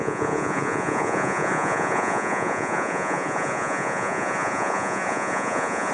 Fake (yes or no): yes